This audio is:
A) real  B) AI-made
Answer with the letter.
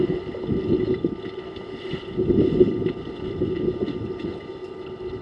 A